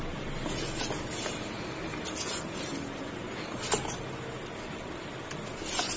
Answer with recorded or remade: recorded